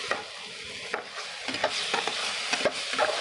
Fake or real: real